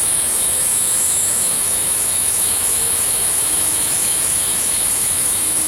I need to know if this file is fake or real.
fake